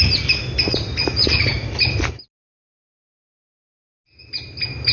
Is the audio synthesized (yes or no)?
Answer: no